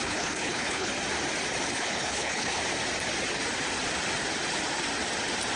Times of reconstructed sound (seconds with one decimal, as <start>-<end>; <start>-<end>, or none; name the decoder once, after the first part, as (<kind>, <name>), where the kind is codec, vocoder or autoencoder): 0.0-0.9 (codec, HILCodec); 1.7-2.6